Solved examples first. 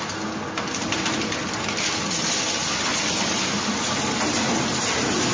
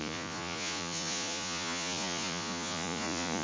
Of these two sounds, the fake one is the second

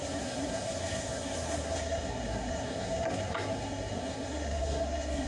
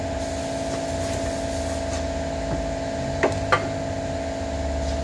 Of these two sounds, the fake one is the first